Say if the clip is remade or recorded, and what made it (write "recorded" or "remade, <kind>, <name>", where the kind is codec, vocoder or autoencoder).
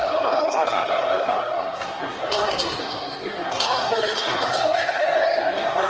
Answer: remade, codec, SNAC